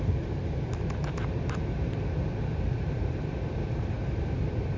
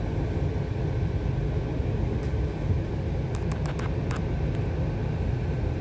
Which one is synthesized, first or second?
first